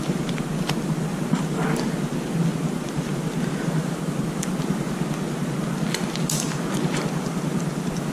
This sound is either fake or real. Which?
real